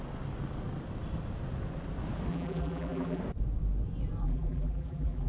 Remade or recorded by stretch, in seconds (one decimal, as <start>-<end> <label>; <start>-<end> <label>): 0.0-2.3 recorded; 2.3-3.2 remade; 3.2-4.2 recorded; 4.2-5.3 remade